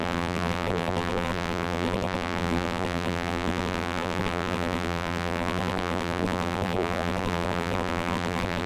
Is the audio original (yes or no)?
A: no